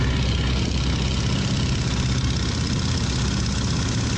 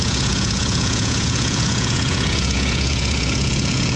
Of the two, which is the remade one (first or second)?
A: second